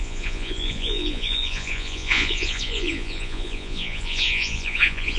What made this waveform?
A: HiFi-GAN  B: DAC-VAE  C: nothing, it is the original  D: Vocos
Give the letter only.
D